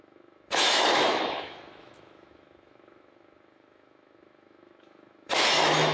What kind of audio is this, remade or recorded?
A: remade